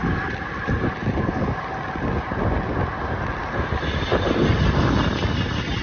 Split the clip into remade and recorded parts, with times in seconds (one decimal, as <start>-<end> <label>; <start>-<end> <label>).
0.0-5.8 recorded